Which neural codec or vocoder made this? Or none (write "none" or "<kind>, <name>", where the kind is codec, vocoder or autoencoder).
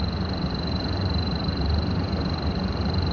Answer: vocoder, BigVGAN v2